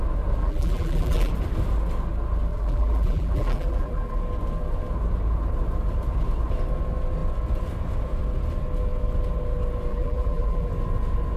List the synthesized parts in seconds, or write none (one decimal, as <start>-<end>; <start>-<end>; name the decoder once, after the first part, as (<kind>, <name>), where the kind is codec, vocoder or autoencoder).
0.4-1.3 (vocoder, BigVGAN v2); 2.5-4.2; 9.9-10.7

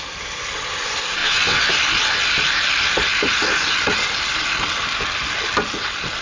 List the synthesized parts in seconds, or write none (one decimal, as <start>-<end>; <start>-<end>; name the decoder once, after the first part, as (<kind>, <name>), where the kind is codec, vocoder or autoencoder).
1.2-1.7 (vocoder, WaveNeXt)

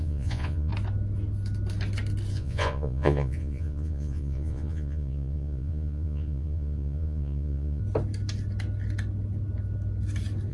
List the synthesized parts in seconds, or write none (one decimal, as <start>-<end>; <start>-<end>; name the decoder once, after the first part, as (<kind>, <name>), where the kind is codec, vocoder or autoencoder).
0.0-0.7 (vocoder, Vocos); 2.3-7.8

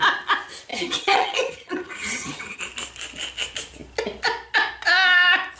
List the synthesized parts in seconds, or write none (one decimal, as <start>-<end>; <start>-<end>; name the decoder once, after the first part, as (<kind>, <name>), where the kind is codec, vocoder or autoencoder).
0.7-2.6 (vocoder, HiFi-GAN)

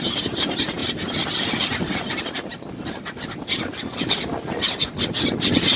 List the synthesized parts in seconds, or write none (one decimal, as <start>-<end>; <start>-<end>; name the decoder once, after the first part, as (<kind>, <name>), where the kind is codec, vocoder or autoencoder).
0.0-2.5 (vocoder, BigVGAN v2); 3.4-5.8

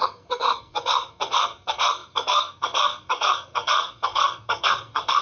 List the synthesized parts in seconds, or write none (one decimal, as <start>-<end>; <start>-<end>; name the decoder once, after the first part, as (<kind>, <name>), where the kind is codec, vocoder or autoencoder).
0.0-5.2 (codec, SNAC)

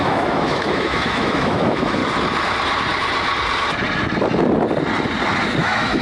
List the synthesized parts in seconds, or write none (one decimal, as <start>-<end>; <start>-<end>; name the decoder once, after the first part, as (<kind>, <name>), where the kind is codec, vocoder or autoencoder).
0.0-2.0 (autoencoder, DAC-VAE); 5.6-6.0

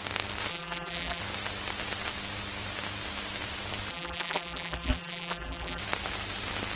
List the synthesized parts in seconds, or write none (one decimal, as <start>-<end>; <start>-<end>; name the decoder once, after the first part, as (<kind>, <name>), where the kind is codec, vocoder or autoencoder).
0.5-1.2 (vocoder, BigVGAN v2); 3.9-5.8